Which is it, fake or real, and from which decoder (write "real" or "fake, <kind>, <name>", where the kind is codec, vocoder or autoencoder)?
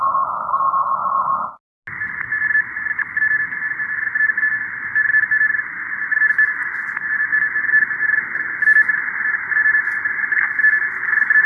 real